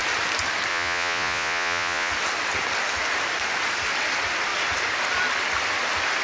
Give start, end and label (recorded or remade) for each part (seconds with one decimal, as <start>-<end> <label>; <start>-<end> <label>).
0.0-0.7 recorded; 0.7-2.1 remade; 2.1-6.2 recorded

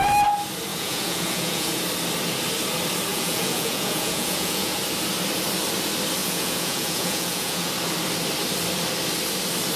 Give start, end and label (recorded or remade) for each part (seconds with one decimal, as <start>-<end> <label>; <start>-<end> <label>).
0.0-0.7 recorded; 0.7-1.8 remade; 1.8-3.1 recorded; 3.1-4.8 remade; 4.8-6.2 recorded; 6.2-7.7 remade; 7.7-9.8 recorded

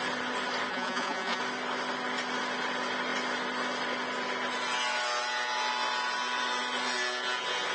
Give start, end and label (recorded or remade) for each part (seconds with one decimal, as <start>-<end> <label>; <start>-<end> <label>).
0.0-0.7 recorded; 0.7-1.4 remade; 1.4-7.7 recorded

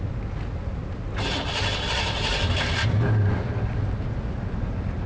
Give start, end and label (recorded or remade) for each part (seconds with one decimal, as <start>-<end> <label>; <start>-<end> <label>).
0.0-5.1 recorded

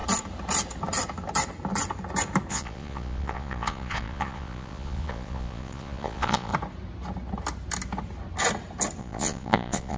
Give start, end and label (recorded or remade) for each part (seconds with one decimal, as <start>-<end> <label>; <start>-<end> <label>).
0.0-2.5 recorded; 2.5-6.5 remade; 6.5-9.0 recorded; 9.0-10.0 remade

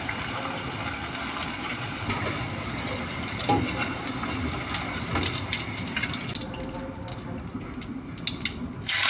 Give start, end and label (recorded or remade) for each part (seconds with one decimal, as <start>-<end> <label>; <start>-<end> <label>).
0.0-1.5 recorded; 1.5-3.0 remade; 3.0-9.1 recorded

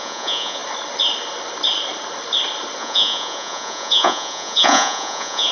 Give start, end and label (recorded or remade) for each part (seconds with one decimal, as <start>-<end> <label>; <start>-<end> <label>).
0.0-0.6 remade; 0.6-2.8 recorded; 2.8-5.5 remade